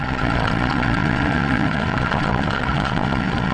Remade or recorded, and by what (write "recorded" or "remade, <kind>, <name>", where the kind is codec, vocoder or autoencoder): remade, vocoder, Vocos